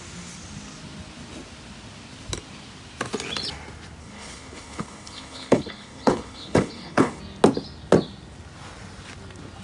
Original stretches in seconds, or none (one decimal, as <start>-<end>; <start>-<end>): 0.0-4.0; 7.2-9.6